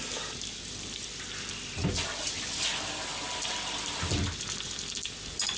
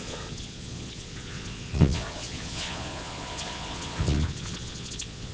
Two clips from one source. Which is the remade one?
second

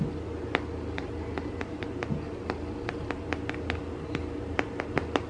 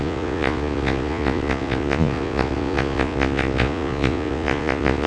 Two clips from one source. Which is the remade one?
second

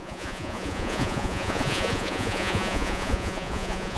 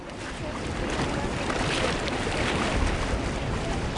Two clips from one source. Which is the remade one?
first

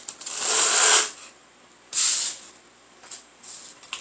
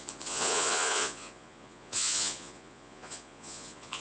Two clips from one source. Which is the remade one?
second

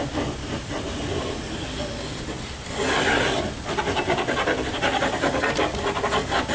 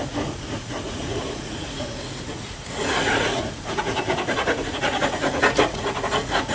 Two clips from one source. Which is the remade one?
second